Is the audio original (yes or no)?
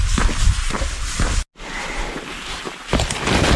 yes